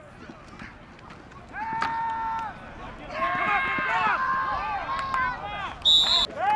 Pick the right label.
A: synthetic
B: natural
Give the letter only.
B